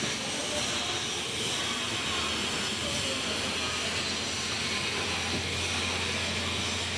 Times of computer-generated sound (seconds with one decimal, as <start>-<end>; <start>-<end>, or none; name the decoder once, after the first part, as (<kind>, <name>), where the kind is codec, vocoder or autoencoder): none